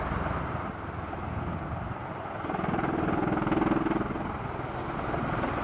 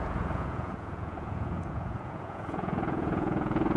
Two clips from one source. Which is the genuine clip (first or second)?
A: first